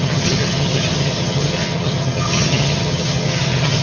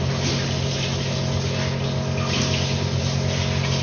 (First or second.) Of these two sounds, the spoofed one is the first